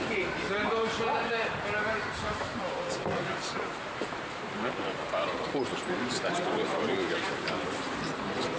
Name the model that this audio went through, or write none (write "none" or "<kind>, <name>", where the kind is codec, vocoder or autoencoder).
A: vocoder, BigVGAN v2